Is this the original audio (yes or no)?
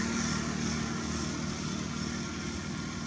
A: yes